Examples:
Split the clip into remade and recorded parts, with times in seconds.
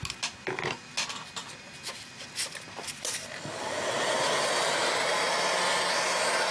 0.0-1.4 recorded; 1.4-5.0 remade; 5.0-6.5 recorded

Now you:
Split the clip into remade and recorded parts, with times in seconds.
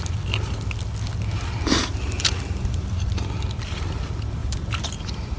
0.0-4.4 recorded; 4.4-5.4 remade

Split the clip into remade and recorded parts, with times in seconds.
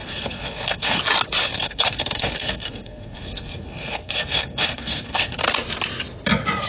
0.0-1.0 remade; 1.0-1.4 recorded; 1.4-5.4 remade; 5.4-6.7 recorded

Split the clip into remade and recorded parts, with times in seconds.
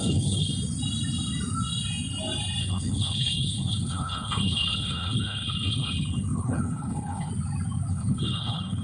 0.0-0.5 remade; 0.5-2.6 recorded; 2.6-7.3 remade; 7.3-7.9 recorded; 7.9-8.8 remade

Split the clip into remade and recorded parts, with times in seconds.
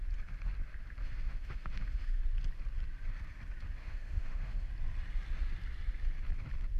0.0-1.0 recorded; 1.0-2.2 remade; 2.2-3.8 recorded; 3.8-4.7 remade; 4.7-6.8 recorded